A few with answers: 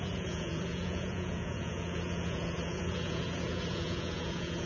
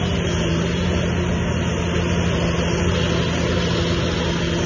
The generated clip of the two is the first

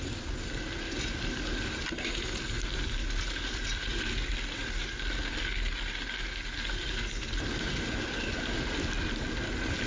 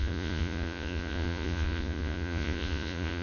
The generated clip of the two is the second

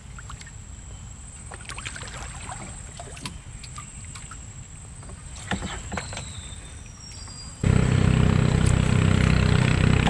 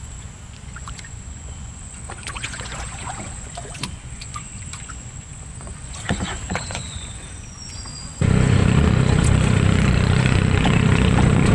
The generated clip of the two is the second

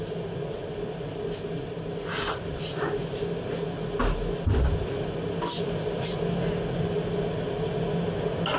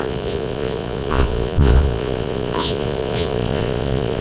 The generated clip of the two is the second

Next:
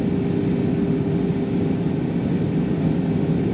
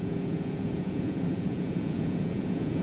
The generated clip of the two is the second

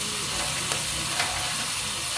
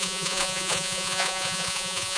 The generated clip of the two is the second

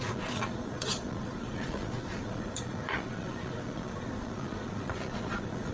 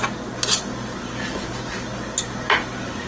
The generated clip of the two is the first